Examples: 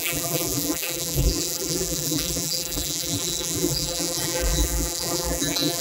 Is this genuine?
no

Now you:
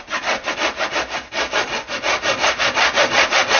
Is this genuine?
yes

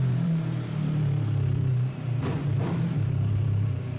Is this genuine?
no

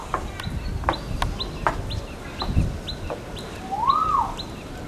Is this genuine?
yes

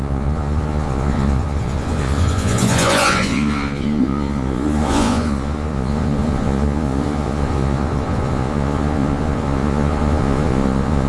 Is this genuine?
no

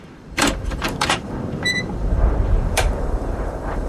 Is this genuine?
no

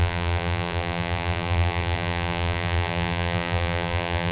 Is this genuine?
no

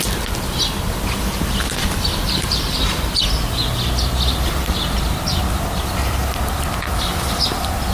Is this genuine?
yes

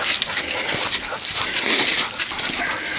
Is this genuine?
yes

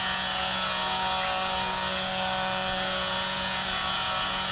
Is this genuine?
no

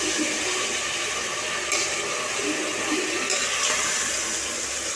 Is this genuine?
yes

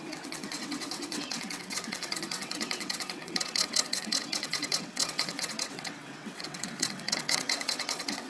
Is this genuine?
no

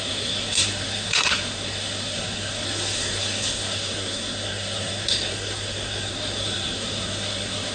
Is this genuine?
no